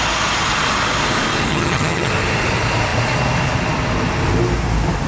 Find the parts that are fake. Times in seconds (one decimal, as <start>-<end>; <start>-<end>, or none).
1.5-2.1